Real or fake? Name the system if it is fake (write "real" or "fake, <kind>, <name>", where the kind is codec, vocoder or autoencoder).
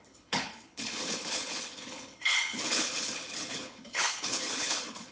fake, codec, HILCodec